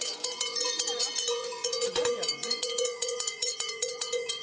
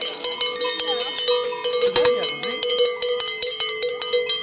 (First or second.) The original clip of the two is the second